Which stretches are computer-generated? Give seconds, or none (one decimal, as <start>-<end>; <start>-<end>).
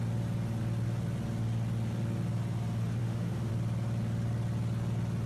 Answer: 3.0-3.5